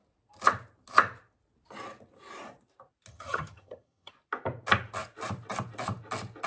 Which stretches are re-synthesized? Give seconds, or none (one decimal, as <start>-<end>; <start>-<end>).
3.1-4.1